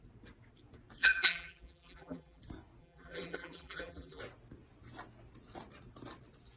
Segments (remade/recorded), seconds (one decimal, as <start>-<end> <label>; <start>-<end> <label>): 0.0-1.0 recorded; 1.0-2.4 remade; 2.4-2.8 recorded; 2.8-4.2 remade; 4.2-6.6 recorded